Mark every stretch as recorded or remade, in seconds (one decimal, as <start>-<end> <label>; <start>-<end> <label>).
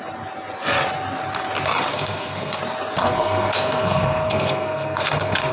0.0-1.9 recorded; 1.9-2.6 remade; 2.6-3.0 recorded; 3.0-5.5 remade